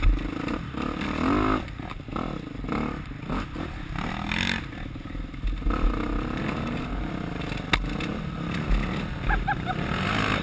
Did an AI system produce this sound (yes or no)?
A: no